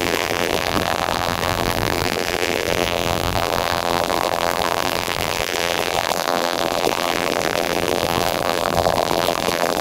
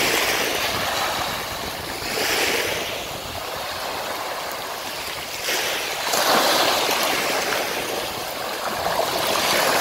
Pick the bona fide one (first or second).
second